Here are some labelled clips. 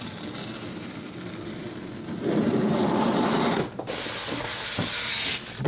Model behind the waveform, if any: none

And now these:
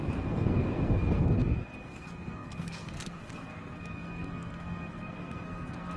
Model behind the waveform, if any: codec, SNAC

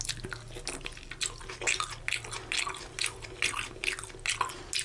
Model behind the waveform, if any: none